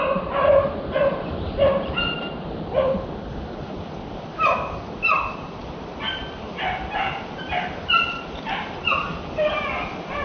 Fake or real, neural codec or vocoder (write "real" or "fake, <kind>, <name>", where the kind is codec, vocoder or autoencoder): real